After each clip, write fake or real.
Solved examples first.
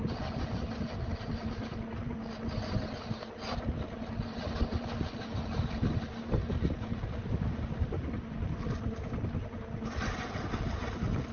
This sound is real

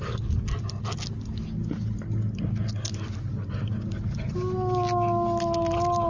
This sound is real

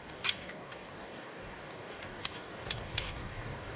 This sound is fake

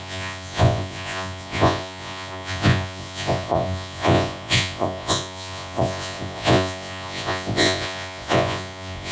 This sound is fake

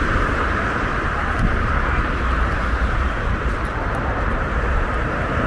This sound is fake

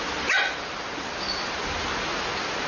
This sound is real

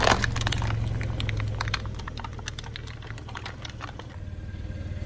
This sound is real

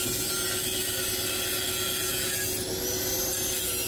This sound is real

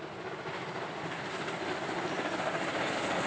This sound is real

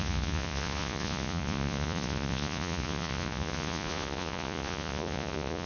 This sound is fake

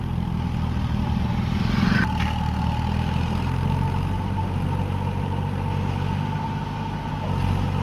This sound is real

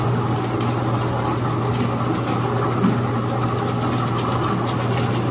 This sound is real